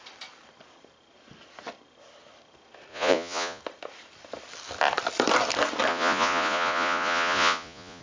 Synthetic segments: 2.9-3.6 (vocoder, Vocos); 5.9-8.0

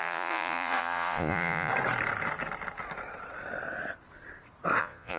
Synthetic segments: 0.0-1.7 (vocoder, Vocos); 4.8-5.2

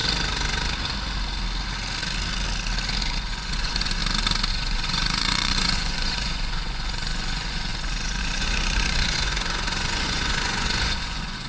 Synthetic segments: 3.0-4.0 (vocoder, Vocos); 4.5-11.5